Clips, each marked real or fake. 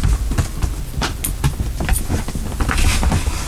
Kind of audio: real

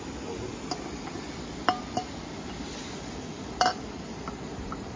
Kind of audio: real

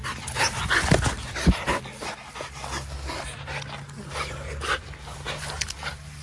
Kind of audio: real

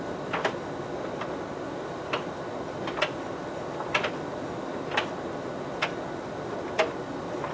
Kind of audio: real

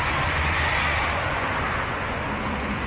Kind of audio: fake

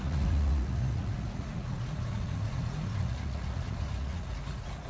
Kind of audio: fake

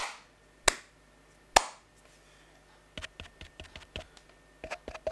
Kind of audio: real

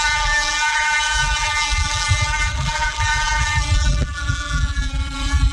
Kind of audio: fake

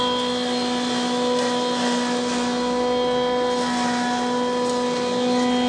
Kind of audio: real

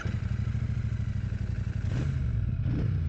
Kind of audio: real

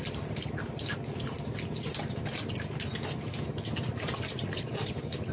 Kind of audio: real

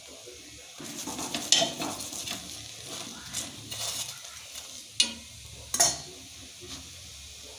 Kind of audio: real